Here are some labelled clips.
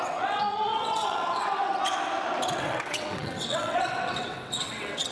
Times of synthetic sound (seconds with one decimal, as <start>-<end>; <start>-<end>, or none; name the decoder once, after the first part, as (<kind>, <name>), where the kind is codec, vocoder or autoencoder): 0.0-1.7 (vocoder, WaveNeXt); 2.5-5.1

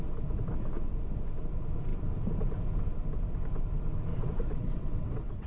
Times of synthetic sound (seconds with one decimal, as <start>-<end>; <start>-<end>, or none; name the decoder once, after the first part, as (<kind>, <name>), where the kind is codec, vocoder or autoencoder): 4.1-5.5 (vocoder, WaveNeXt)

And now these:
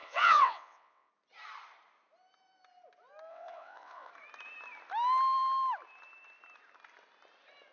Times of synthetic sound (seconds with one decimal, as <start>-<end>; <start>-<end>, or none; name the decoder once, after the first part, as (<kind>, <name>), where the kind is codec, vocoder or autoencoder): 0.0-1.1 (vocoder, WaveNeXt); 3.3-4.1